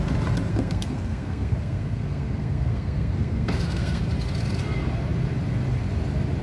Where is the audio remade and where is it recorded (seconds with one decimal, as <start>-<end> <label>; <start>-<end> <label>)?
0.0-0.5 recorded; 0.5-4.0 remade; 4.0-6.4 recorded